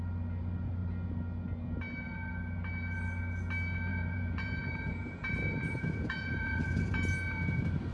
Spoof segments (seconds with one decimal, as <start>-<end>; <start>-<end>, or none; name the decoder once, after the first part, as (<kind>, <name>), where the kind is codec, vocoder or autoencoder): 3.9-6.9 (vocoder, Vocos)